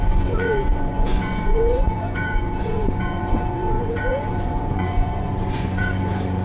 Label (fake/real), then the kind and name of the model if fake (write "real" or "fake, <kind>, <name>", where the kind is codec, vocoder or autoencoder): fake, vocoder, Vocos